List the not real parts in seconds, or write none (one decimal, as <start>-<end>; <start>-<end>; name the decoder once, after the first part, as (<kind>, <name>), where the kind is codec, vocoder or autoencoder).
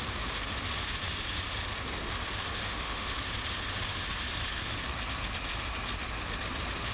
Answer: 2.6-3.1 (autoencoder, DAC-VAE)